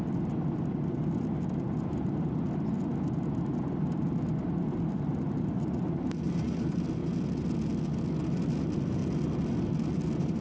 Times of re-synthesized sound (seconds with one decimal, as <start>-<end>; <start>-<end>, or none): 0.0-7.0; 8.6-9.0; 9.7-10.4